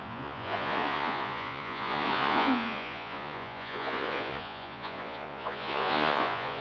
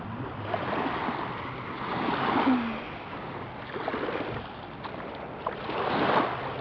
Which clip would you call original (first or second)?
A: second